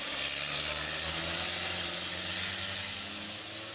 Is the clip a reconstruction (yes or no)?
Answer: no